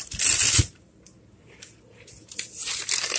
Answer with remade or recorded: recorded